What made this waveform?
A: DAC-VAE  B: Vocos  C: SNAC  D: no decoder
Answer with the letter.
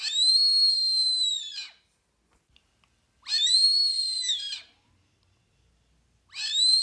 D